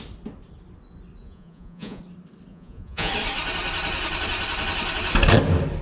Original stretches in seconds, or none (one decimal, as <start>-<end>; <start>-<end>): 0.0-1.2; 2.0-2.5; 3.1-5.8